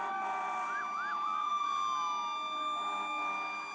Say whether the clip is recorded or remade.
recorded